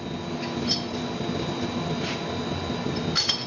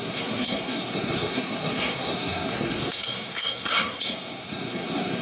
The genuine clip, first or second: first